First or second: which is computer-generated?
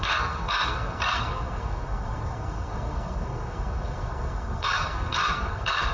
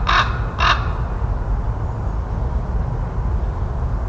first